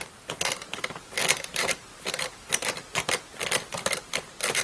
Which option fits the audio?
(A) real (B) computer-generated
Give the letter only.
A